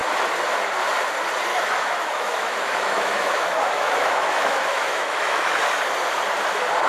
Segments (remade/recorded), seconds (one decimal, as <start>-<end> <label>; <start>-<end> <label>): 0.0-1.5 recorded; 1.5-5.6 remade; 5.6-6.9 recorded